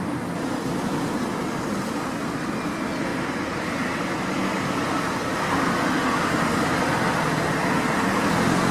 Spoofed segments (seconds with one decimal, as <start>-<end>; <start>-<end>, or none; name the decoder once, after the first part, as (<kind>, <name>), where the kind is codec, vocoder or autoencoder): none